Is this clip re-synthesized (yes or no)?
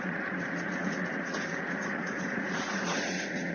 yes